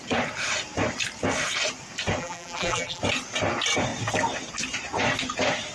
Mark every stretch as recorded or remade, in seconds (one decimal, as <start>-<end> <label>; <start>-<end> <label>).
0.0-2.2 recorded; 2.2-3.0 remade; 3.0-5.7 recorded